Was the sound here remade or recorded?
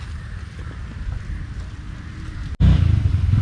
recorded